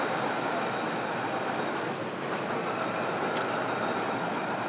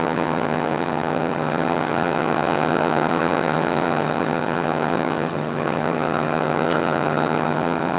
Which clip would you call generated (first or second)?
second